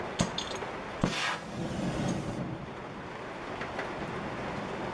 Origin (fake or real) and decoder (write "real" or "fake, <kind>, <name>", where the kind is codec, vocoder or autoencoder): real